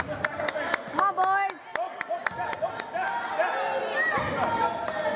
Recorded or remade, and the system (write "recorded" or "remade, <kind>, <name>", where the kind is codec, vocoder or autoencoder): recorded